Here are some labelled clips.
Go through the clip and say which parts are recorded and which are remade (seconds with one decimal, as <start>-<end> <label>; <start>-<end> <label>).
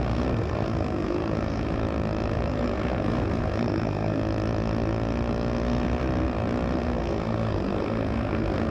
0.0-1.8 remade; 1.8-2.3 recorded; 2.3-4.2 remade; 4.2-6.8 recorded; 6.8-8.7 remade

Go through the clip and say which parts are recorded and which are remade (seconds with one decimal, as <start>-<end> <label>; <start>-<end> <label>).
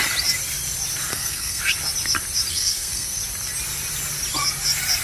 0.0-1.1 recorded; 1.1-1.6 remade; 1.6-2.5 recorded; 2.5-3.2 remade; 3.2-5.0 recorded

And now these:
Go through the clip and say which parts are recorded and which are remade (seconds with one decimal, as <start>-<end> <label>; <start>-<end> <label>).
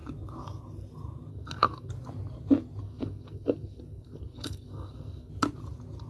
0.0-1.3 recorded; 1.3-1.9 remade; 1.9-2.8 recorded; 2.8-5.3 remade; 5.3-6.1 recorded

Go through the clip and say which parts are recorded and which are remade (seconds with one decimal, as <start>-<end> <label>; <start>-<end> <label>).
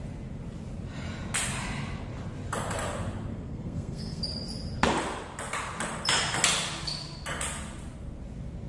0.0-3.3 recorded; 3.3-4.2 remade; 4.2-8.7 recorded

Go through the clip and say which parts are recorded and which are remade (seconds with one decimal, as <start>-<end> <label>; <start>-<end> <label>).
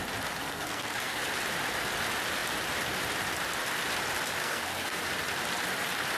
0.0-0.4 recorded; 0.4-1.2 remade; 1.2-4.4 recorded; 4.4-5.0 remade; 5.0-6.2 recorded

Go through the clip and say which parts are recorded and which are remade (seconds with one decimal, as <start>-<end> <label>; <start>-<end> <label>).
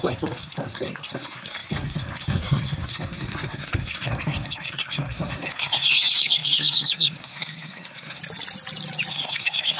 0.0-8.2 remade; 8.2-9.1 recorded; 9.1-9.8 remade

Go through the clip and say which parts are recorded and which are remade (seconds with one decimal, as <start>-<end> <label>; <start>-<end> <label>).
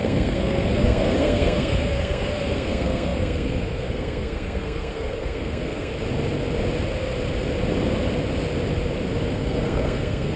0.0-5.9 remade; 5.9-9.3 recorded; 9.3-10.4 remade